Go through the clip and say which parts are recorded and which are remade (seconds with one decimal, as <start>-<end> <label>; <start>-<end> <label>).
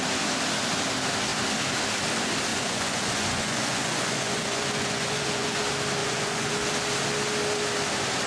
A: 0.0-2.5 recorded; 2.5-5.6 remade; 5.6-6.0 recorded; 6.0-6.5 remade; 6.5-8.3 recorded